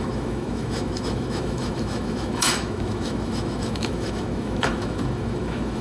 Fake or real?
fake